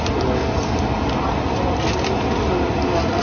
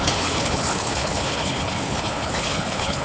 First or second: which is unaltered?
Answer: first